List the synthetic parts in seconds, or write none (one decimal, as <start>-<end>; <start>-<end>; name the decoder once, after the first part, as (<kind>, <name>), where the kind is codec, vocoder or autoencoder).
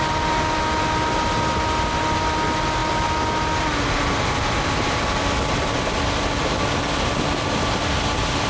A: none